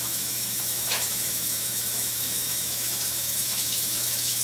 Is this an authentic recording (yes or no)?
no